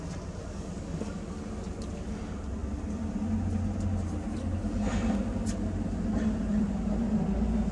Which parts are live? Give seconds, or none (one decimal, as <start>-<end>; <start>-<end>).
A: 0.0-0.4; 1.4-7.7